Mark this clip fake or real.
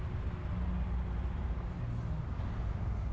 real